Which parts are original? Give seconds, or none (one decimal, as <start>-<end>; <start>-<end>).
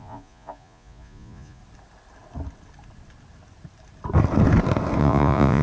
1.6-5.0